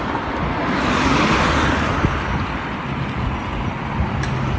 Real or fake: real